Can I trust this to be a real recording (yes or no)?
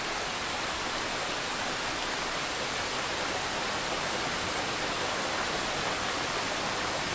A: yes